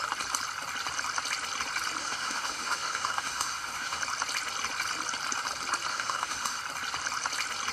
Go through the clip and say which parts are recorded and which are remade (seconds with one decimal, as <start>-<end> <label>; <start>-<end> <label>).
0.0-2.0 recorded; 2.0-4.0 remade; 4.0-5.9 recorded; 5.9-6.6 remade; 6.6-7.7 recorded

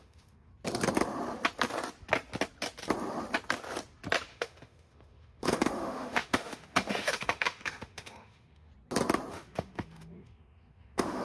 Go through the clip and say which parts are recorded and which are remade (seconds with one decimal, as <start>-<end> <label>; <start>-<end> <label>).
0.0-0.5 remade; 0.5-4.3 recorded; 4.3-8.7 remade; 8.7-9.3 recorded; 9.3-11.2 remade